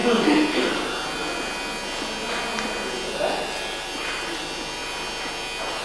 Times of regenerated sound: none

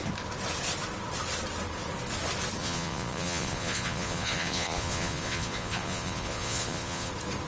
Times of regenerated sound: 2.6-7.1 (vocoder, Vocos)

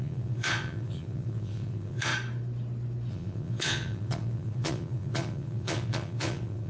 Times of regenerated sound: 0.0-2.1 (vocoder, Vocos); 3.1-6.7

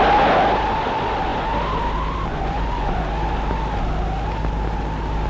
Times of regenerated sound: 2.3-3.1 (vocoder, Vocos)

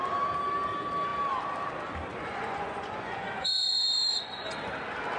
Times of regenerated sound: 2.1-4.6 (vocoder, Vocos)

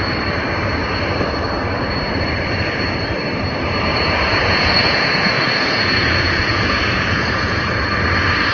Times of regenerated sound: 3.9-7.9 (vocoder, Vocos)

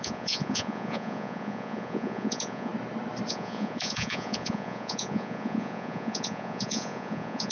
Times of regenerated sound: 0.0-2.7 (vocoder, Vocos); 3.3-7.5